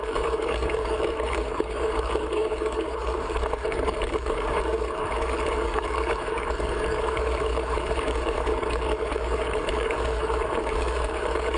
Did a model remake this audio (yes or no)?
yes